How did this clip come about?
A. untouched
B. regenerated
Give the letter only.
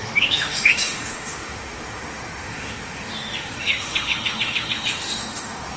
B